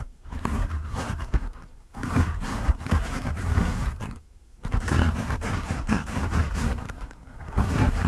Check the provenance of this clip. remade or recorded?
remade